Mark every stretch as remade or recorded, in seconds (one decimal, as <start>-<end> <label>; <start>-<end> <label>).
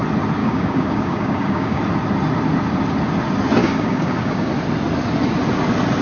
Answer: 0.0-0.4 recorded; 0.4-1.8 remade; 1.8-3.6 recorded; 3.6-4.5 remade; 4.5-6.0 recorded